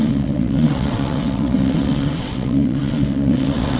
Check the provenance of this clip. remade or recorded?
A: remade